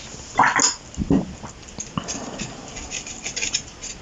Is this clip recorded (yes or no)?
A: yes